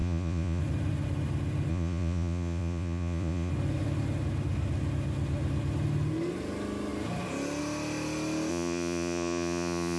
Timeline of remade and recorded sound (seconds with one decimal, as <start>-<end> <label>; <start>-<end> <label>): 0.0-0.6 remade; 0.6-1.7 recorded; 1.7-3.5 remade; 3.5-8.5 recorded; 8.5-10.0 remade